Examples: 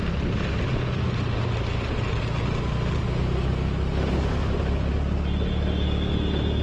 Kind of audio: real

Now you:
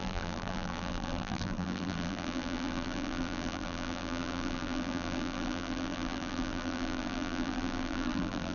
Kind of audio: fake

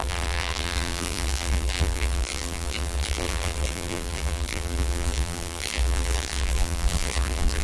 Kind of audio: fake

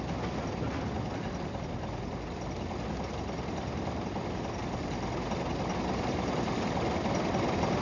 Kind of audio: real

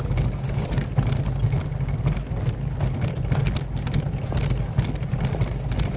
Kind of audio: real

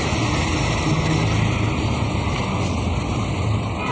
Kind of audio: real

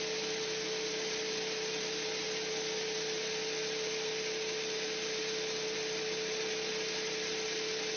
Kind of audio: real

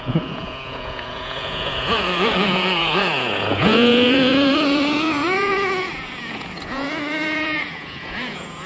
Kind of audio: fake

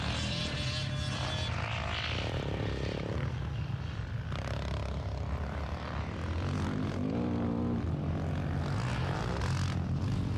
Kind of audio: real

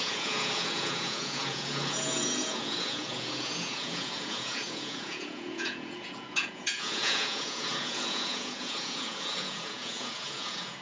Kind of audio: fake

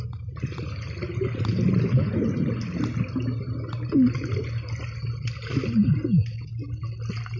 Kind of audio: real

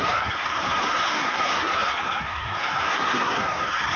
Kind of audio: fake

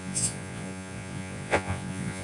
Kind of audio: fake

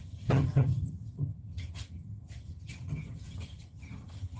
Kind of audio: fake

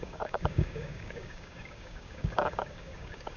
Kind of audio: fake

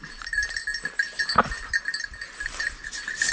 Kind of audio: fake